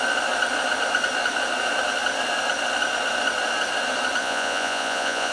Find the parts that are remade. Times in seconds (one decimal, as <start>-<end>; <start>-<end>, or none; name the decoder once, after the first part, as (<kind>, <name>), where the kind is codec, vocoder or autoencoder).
4.2-5.3 (vocoder, Vocos)